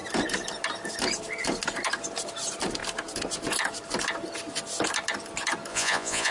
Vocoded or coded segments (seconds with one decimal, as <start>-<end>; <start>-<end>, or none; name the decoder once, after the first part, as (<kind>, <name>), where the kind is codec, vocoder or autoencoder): 5.7-6.3 (vocoder, Vocos)